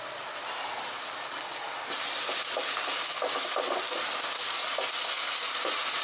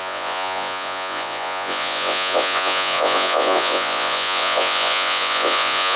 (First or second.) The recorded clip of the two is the first